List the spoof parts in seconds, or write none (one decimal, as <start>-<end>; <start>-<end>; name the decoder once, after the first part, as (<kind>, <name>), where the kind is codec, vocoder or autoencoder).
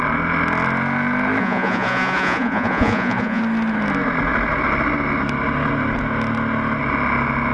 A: 1.4-3.4 (vocoder, Vocos)